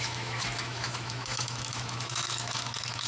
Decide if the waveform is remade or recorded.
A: remade